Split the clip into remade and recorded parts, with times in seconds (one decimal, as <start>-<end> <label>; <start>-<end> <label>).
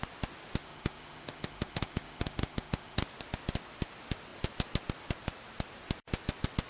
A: 0.0-0.6 recorded; 0.6-3.0 remade; 3.0-6.7 recorded